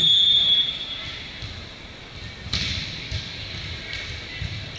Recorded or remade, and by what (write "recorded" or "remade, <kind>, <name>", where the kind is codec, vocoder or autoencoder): recorded